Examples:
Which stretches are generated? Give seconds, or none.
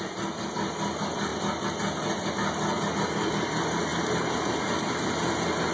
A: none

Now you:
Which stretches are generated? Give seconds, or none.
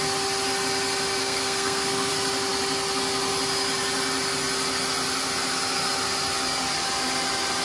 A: 1.2-2.1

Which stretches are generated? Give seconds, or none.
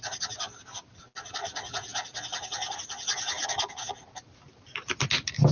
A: none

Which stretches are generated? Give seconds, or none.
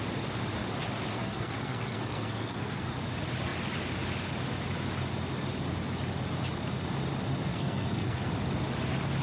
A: 1.1-2.9; 7.5-8.3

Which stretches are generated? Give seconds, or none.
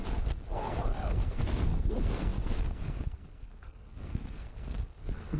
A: 0.0-5.4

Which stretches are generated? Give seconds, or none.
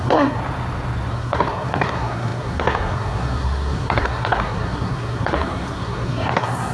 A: 0.0-0.4; 1.1-6.7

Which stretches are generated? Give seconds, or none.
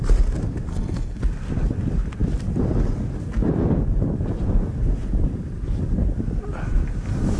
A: 0.7-1.2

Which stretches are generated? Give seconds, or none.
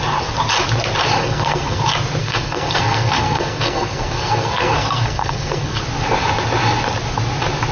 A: 1.2-1.8; 2.2-5.8